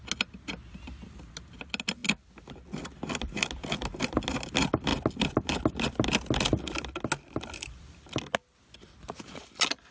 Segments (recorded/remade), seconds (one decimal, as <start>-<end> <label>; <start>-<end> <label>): 0.0-9.9 recorded